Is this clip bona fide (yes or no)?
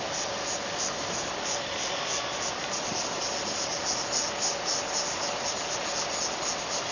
yes